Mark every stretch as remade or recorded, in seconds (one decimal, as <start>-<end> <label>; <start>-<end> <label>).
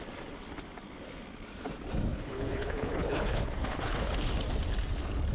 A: 0.0-2.1 recorded; 2.1-4.3 remade; 4.3-5.3 recorded